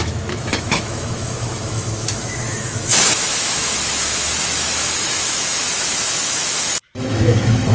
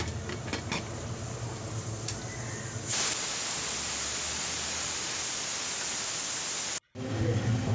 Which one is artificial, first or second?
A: first